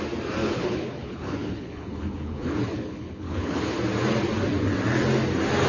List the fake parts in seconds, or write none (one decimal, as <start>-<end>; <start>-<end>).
0.4-3.8